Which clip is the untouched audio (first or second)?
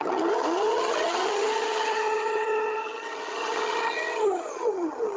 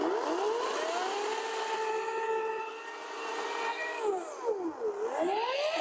second